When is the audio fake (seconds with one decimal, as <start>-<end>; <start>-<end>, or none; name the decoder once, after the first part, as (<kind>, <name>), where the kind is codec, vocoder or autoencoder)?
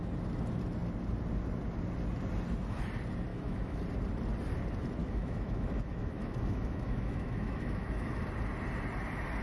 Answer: 3.3-3.8 (autoencoder, DAC-VAE); 5.0-8.2